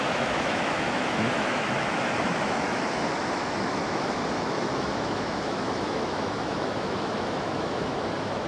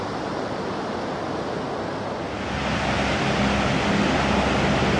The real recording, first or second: second